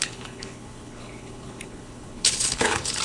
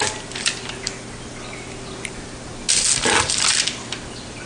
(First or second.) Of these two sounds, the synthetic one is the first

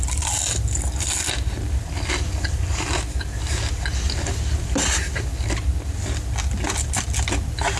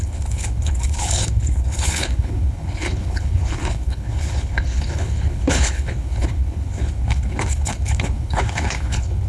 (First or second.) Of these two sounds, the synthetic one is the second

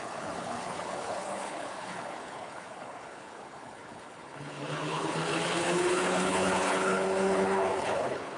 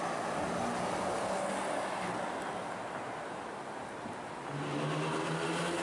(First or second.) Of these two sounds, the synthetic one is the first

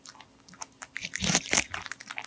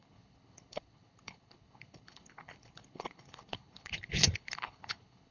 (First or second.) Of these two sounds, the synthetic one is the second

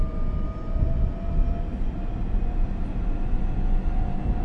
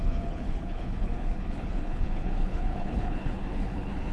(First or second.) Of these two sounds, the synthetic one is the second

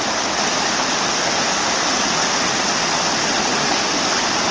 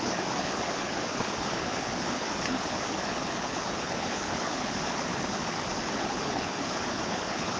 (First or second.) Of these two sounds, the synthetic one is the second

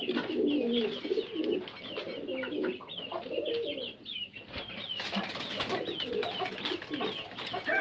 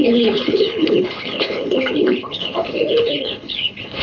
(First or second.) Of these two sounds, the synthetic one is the second